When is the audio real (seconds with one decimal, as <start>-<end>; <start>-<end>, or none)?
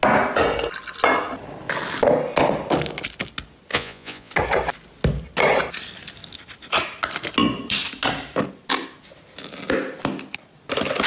0.0-3.7; 4.3-11.1